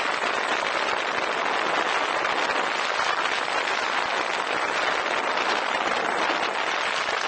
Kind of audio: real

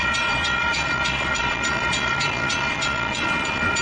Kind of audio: fake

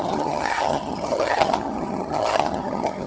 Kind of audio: fake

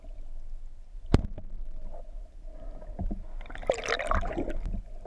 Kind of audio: real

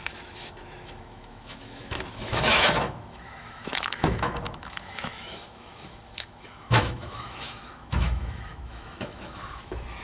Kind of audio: fake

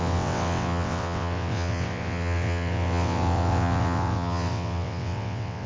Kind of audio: fake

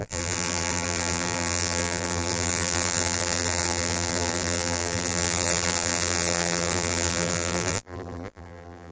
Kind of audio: fake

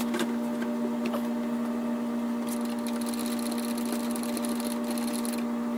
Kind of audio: real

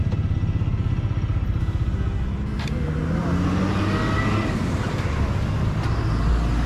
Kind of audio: real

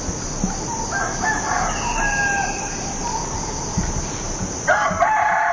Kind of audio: real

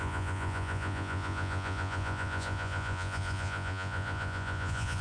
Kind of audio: fake